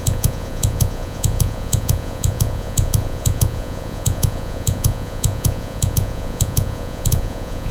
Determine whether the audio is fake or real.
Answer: fake